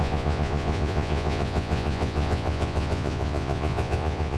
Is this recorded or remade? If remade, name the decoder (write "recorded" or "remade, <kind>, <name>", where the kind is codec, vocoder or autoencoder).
remade, vocoder, Vocos